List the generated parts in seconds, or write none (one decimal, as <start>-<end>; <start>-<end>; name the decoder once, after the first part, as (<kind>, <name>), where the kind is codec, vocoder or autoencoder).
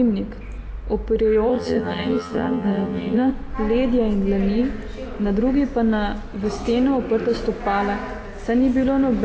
1.5-3.3 (vocoder, HiFi-GAN)